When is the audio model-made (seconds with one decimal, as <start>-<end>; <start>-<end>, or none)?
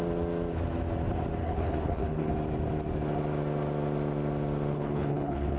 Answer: 1.4-2.3; 4.7-5.6